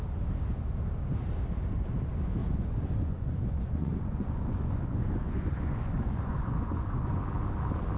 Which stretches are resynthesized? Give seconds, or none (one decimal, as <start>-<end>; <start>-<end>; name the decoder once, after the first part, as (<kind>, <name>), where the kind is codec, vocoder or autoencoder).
2.4-7.2 (vocoder, Vocos)